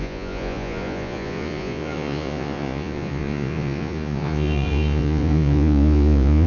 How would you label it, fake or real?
fake